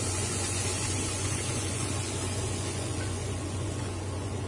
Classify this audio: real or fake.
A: fake